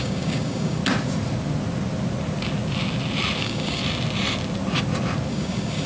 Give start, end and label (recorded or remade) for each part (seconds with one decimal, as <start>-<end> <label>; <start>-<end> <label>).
0.0-0.8 remade; 0.8-3.4 recorded; 3.4-3.8 remade; 3.8-5.3 recorded; 5.3-5.9 remade

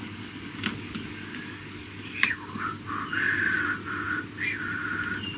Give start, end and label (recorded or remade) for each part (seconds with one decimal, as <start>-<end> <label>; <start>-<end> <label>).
0.0-2.8 remade; 2.8-5.4 recorded

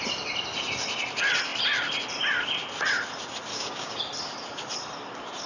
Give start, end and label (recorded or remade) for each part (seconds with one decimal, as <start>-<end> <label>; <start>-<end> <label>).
0.0-3.5 recorded; 3.5-4.0 remade; 4.0-5.5 recorded

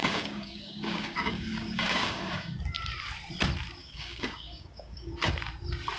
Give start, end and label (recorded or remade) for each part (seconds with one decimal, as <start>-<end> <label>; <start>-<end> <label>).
0.0-2.6 remade; 2.6-3.8 recorded; 3.8-5.3 remade; 5.3-6.0 recorded

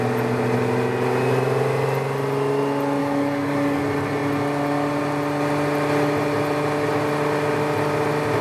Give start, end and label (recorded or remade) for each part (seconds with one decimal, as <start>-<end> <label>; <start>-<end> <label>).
0.0-3.0 recorded; 3.0-3.8 remade; 3.8-8.4 recorded

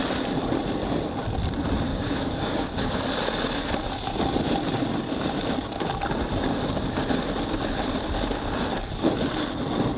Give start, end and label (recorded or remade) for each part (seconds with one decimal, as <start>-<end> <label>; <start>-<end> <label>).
0.0-1.9 recorded; 1.9-3.0 remade; 3.0-10.0 recorded

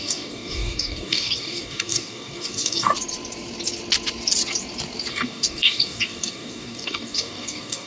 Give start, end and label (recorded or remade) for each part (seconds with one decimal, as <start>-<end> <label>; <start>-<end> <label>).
0.0-2.9 remade; 2.9-5.1 recorded; 5.1-7.9 remade

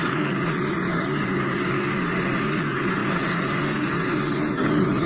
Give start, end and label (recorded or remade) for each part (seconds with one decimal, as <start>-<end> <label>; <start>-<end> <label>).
0.0-0.9 recorded; 0.9-1.9 remade; 1.9-5.1 recorded